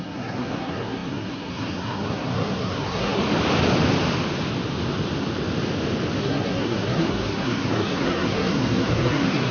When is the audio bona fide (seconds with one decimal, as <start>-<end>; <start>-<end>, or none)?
3.2-6.2